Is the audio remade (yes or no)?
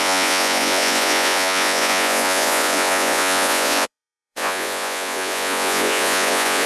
yes